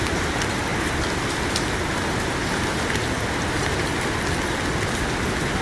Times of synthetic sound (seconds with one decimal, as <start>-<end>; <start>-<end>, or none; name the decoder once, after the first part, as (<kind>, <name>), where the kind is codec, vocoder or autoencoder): none